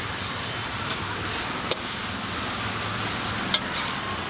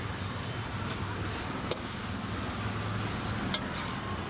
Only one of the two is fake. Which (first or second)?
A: first